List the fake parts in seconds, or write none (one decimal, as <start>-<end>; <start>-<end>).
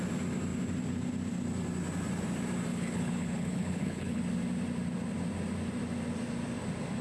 2.7-4.2